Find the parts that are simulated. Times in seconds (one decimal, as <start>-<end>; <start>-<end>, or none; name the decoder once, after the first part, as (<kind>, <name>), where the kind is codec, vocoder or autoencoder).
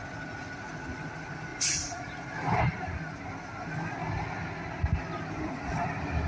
1.5-2.3 (vocoder, Vocos)